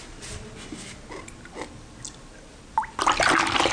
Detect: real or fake real